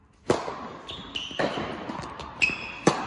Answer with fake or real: real